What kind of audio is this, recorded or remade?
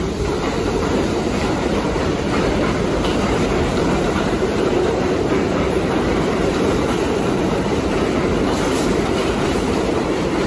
remade